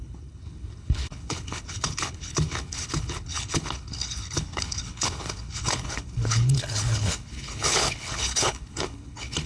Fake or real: fake